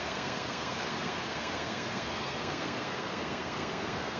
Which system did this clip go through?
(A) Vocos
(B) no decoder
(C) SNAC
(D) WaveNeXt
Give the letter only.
C